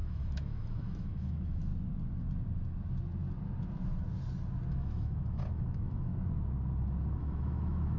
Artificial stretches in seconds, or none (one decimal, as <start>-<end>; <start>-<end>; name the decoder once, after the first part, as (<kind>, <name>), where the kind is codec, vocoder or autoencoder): 0.0-1.7 (autoencoder, DAC-VAE); 4.7-6.1; 7.2-8.0